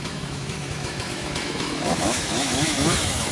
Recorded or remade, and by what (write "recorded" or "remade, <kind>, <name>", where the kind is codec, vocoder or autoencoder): remade, autoencoder, DAC-VAE